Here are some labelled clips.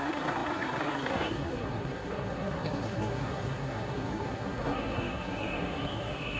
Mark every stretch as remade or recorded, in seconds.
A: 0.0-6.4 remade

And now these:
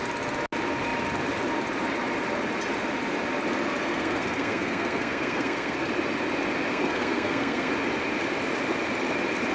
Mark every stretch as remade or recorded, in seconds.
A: 0.0-3.8 recorded; 3.8-5.9 remade; 5.9-6.7 recorded; 6.7-7.7 remade; 7.7-9.5 recorded